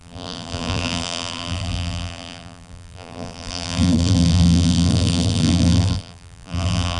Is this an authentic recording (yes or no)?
no